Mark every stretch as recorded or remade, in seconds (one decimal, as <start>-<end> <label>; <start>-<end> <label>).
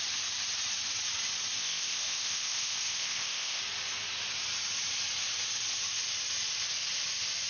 0.0-1.6 recorded; 1.6-3.6 remade; 3.6-7.5 recorded